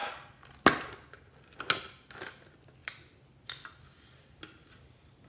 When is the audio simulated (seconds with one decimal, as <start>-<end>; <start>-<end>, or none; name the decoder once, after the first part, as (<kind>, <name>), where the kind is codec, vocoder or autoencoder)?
none